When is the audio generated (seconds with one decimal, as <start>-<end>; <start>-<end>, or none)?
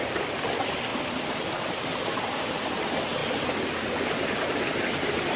none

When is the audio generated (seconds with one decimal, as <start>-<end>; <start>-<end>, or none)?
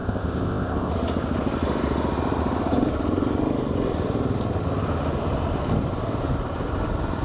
0.0-0.9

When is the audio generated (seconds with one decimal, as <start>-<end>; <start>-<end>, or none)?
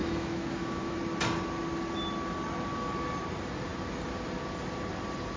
0.0-1.0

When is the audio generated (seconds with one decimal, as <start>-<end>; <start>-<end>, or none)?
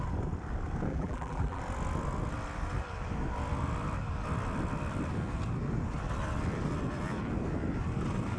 0.9-1.6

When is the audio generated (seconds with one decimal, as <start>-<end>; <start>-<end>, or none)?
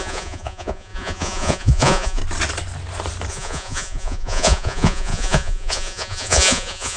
0.0-2.2; 3.3-7.0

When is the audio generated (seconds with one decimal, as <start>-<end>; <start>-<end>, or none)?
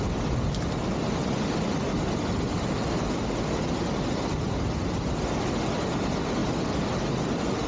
none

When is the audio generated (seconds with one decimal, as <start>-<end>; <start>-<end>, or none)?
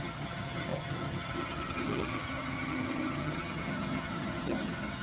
0.0-5.0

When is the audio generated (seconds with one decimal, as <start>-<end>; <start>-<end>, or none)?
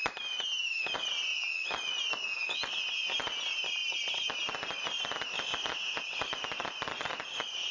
0.0-1.3; 2.8-7.7